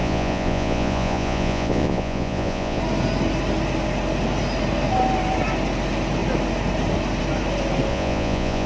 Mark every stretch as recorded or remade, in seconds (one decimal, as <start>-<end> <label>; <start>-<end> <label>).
0.0-2.8 remade; 2.8-7.9 recorded; 7.9-8.7 remade